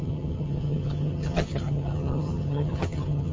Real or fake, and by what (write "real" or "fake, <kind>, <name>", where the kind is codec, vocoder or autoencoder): fake, vocoder, HiFi-GAN